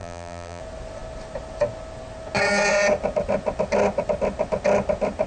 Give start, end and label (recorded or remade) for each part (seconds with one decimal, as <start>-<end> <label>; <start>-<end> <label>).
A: 0.0-0.6 remade; 0.6-5.3 recorded